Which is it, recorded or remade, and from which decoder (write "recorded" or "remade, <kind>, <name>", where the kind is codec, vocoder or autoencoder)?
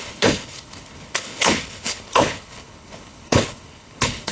remade, codec, HILCodec